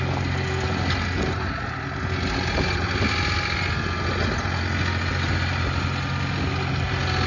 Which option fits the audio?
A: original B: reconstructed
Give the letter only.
A